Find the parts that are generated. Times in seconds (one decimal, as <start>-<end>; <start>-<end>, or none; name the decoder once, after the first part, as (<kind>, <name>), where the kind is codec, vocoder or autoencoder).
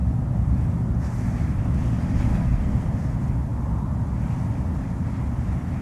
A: 2.3-2.9 (codec, SNAC)